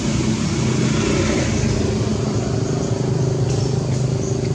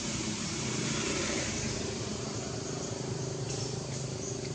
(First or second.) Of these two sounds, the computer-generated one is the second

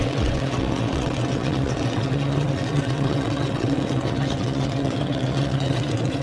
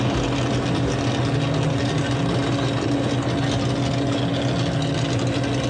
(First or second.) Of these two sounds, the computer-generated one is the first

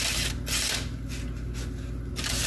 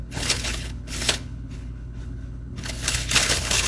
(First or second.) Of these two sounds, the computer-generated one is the second